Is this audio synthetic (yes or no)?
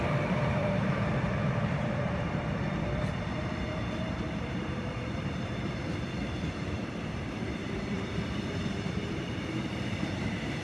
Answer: yes